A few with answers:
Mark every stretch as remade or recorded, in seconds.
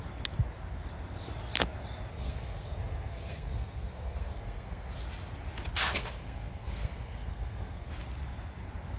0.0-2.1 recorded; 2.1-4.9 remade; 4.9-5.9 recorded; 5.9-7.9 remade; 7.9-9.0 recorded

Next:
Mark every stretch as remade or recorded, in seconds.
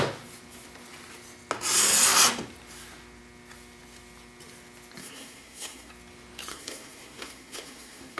0.0-5.0 recorded; 5.0-5.9 remade; 5.9-6.5 recorded; 6.5-8.2 remade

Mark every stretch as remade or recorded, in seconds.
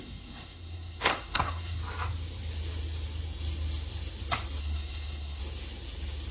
0.0-1.8 remade; 1.8-4.6 recorded; 4.6-5.4 remade; 5.4-6.3 recorded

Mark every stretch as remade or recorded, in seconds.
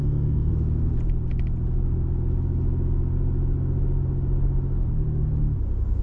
0.0-0.5 remade; 0.5-6.0 recorded